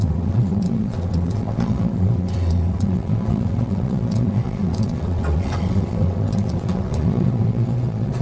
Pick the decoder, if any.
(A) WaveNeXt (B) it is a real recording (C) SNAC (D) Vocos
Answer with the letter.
A